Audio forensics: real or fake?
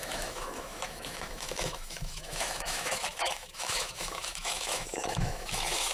fake